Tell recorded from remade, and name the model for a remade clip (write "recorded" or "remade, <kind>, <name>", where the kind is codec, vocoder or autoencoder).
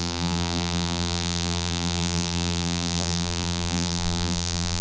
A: remade, vocoder, BigVGAN v2